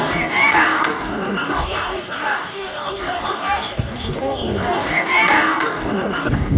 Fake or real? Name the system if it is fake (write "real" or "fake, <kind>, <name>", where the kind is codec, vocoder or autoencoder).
fake, codec, DAC